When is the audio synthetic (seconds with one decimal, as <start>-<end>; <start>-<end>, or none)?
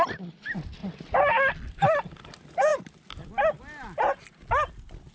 none